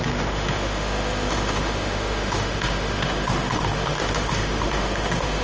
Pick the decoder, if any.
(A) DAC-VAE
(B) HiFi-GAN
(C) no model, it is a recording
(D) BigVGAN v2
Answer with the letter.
A